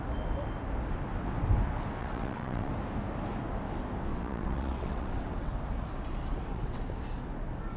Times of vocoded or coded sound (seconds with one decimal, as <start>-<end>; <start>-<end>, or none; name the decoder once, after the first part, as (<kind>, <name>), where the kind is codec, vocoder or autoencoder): 2.0-2.7 (vocoder, WaveNeXt); 4.1-5.6; 6.3-6.8